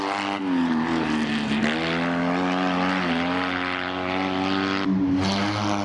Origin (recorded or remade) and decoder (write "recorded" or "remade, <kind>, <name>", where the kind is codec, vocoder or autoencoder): recorded